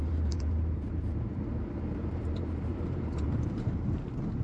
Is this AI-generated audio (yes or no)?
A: yes